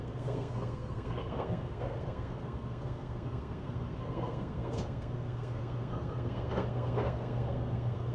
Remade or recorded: remade